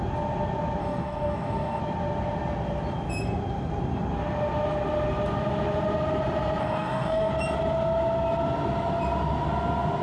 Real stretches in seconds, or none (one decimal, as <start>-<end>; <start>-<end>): 0.0-0.8; 1.8-6.6; 7.3-10.0